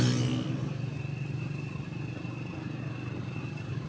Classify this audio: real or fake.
real